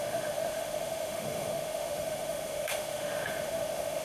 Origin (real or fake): fake